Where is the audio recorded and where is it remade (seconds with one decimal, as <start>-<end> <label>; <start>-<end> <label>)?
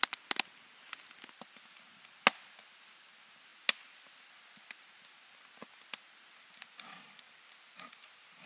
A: 0.0-8.5 recorded